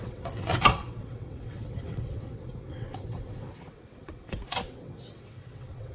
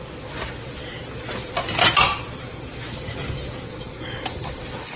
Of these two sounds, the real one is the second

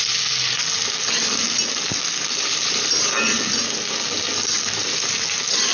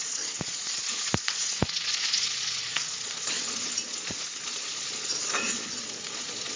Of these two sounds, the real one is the first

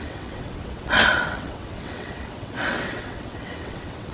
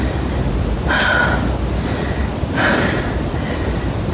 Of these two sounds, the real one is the second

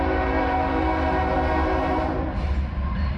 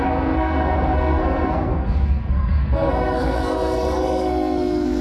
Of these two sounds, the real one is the first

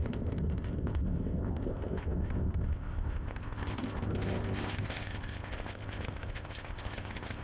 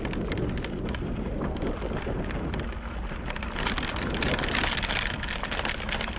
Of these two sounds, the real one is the second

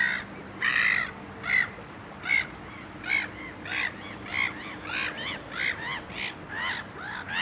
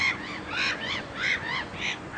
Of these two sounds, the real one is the first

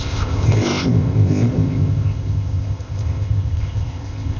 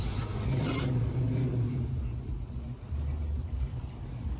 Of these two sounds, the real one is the second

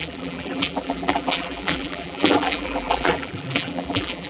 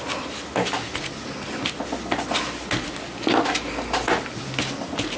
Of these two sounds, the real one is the second